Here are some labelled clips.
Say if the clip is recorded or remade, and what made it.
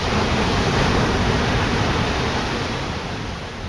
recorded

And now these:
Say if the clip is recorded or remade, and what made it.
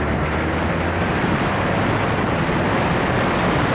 recorded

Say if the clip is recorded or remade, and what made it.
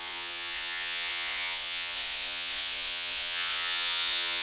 remade, vocoder, Vocos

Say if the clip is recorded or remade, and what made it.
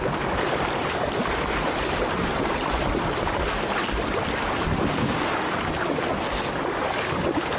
recorded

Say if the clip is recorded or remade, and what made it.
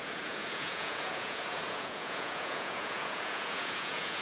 remade, vocoder, Vocos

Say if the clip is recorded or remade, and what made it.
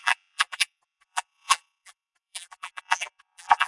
remade, vocoder, BigVGAN v2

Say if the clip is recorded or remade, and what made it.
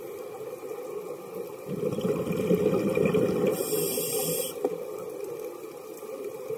recorded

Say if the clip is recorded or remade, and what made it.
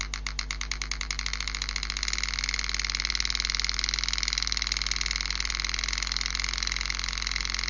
recorded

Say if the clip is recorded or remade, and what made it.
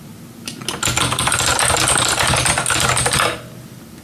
recorded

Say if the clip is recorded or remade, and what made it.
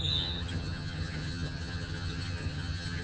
remade, vocoder, HiFi-GAN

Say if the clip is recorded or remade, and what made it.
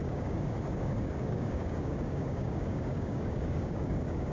remade, codec, DAC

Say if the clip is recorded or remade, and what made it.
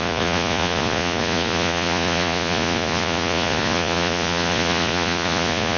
remade, vocoder, Vocos